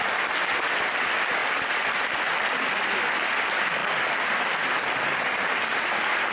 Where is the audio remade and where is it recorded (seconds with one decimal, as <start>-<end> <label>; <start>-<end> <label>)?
0.0-1.4 recorded; 1.4-2.7 remade; 2.7-6.3 recorded